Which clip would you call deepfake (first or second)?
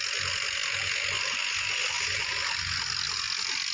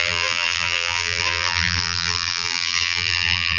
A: second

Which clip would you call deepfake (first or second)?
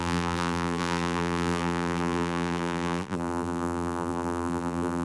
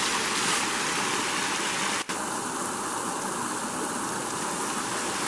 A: first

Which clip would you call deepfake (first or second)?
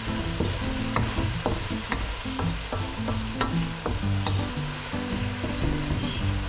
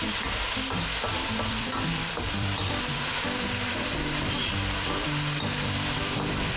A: second